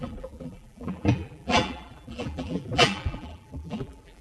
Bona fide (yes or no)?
no